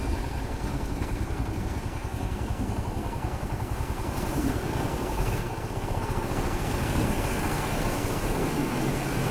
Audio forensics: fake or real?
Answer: fake